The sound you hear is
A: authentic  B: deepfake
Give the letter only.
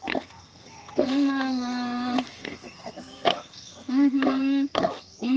B